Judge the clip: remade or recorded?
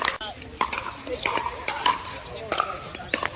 recorded